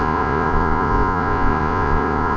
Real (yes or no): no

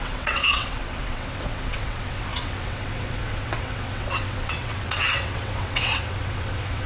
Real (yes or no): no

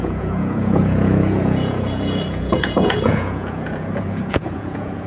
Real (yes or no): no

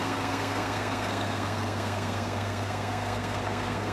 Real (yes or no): no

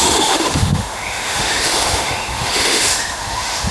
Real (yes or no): no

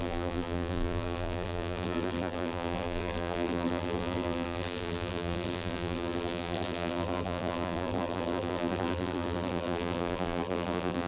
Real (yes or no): no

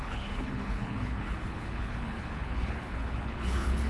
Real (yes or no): no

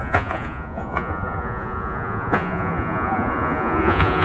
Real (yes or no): no